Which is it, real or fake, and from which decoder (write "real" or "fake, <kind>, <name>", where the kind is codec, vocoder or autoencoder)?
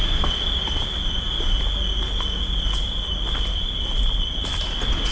real